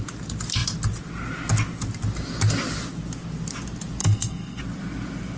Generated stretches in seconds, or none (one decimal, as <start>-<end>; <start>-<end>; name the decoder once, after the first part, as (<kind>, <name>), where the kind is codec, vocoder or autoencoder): 4.0-4.6 (codec, SNAC)